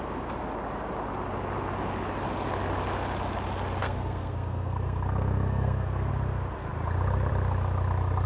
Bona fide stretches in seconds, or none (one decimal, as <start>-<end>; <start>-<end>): 0.0-3.8; 6.1-8.3